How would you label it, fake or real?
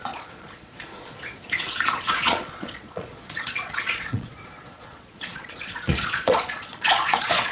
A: fake